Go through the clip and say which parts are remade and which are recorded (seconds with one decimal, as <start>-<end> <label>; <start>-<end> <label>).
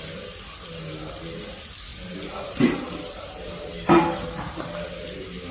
0.0-1.9 recorded; 1.9-4.0 remade; 4.0-5.5 recorded